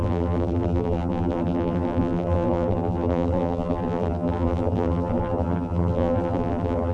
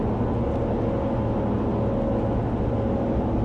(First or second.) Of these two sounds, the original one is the second